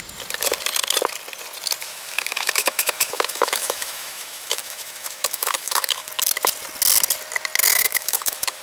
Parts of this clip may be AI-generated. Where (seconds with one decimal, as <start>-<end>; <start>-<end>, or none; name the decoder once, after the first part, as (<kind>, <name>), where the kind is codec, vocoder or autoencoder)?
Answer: 1.8-6.1 (autoencoder, DAC-VAE); 7.7-8.6